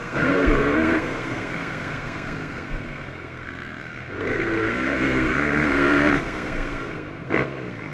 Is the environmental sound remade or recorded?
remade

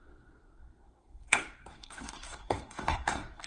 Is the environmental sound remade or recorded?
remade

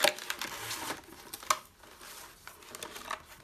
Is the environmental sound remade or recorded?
recorded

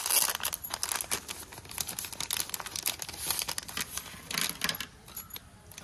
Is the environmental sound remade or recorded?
recorded